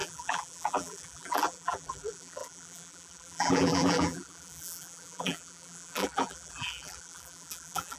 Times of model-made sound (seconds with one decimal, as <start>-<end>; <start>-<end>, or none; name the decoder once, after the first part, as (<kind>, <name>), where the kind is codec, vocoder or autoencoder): 0.0-8.0 (vocoder, BigVGAN v2)